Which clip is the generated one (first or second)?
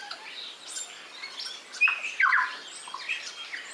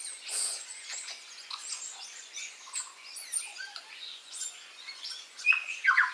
second